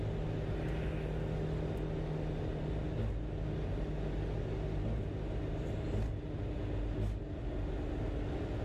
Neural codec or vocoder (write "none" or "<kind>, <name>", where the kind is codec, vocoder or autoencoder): none